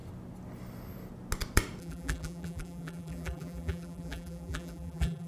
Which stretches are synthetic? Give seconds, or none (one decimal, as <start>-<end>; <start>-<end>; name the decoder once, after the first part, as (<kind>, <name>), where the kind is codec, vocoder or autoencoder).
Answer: 1.8-5.3 (vocoder, BigVGAN v2)